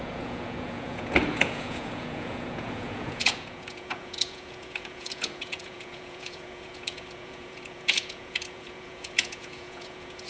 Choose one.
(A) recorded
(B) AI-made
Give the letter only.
B